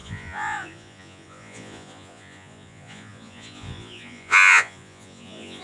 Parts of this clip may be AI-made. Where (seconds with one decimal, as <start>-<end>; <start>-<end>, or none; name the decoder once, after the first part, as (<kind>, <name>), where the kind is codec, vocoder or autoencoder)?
0.0-5.6 (vocoder, Vocos)